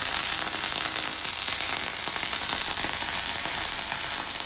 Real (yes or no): yes